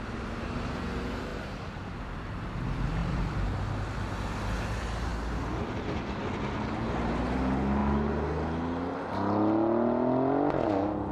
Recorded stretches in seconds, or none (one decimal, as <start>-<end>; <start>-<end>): 0.0-1.3; 2.0-3.0; 3.6-11.1